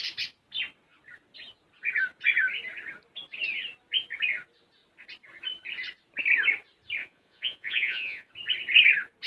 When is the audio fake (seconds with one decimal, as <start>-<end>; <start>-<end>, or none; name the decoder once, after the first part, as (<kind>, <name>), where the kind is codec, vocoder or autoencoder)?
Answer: 7.0-8.3 (vocoder, Vocos)